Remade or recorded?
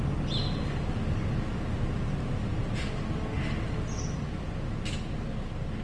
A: recorded